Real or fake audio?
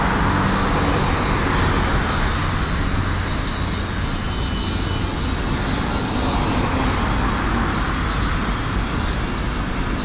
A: real